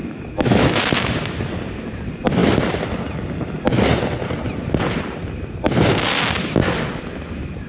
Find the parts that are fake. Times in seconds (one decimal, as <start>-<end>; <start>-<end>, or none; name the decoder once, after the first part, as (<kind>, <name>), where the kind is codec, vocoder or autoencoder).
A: 0.0-0.8 (autoencoder, DAC-VAE)

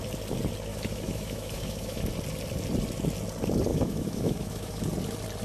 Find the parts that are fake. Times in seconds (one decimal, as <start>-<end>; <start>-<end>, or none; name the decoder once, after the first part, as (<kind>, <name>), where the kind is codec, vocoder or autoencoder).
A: 0.7-2.0 (autoencoder, DAC-VAE); 3.7-4.8

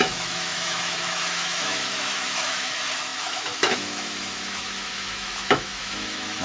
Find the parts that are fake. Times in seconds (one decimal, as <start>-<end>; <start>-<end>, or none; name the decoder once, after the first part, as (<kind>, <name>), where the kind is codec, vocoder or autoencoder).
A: 0.0-6.4 (autoencoder, DAC-VAE)